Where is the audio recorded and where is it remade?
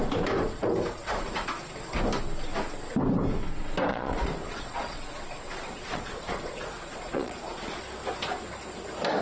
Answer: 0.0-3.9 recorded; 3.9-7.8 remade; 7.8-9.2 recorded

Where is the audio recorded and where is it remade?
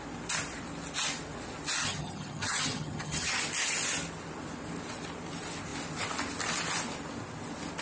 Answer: 0.0-1.8 recorded; 1.8-3.4 remade; 3.4-7.8 recorded